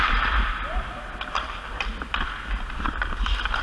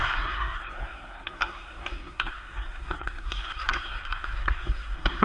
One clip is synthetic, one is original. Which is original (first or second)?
first